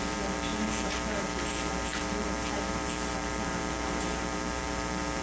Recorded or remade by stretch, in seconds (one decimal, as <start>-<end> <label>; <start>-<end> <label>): 0.0-5.2 remade